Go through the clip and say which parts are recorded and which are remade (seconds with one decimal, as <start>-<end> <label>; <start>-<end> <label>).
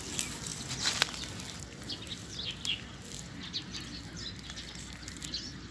0.0-5.7 recorded